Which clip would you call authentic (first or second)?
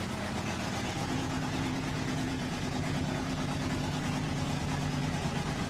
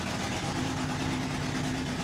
second